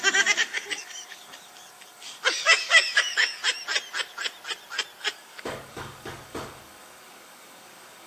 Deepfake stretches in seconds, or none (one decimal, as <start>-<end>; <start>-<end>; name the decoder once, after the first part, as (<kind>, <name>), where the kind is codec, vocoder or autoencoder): 0.0-3.4 (codec, DAC); 5.0-8.1